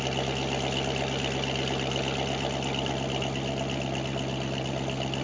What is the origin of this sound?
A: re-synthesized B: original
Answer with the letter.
B